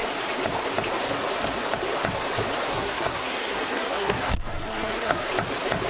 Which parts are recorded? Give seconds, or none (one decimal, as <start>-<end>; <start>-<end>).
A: 0.0-2.7; 5.3-5.9